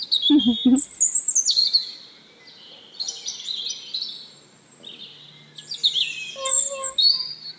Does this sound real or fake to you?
real